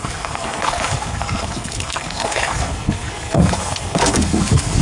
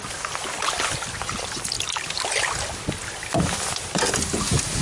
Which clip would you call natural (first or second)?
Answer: second